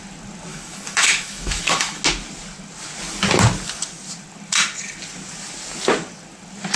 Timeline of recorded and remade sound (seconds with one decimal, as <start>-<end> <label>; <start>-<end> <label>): 0.0-0.5 recorded; 0.5-2.0 remade; 2.0-6.8 recorded

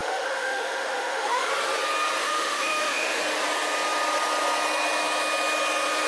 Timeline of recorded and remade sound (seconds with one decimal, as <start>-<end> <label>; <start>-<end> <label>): 0.0-1.5 remade; 1.5-2.2 recorded; 2.2-3.2 remade; 3.2-6.1 recorded

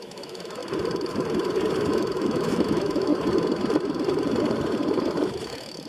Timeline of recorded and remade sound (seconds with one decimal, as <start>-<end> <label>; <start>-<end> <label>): 0.0-0.6 remade; 0.6-1.9 recorded; 1.9-3.1 remade; 3.1-5.4 recorded; 5.4-5.9 remade